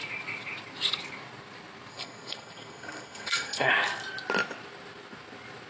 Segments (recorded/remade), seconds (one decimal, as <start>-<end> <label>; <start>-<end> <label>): 0.0-1.9 recorded; 1.9-3.7 remade; 3.7-5.7 recorded